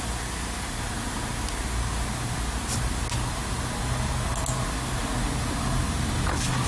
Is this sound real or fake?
real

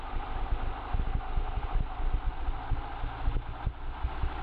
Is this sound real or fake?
real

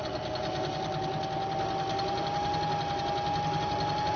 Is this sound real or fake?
real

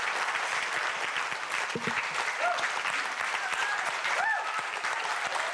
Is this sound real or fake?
fake